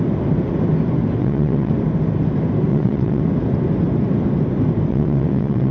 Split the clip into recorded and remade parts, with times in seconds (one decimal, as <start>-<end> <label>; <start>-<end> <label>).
0.0-1.2 recorded; 1.2-1.7 remade; 1.7-2.7 recorded; 2.7-3.2 remade; 3.2-4.9 recorded; 4.9-5.7 remade